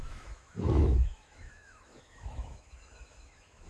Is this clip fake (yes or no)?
yes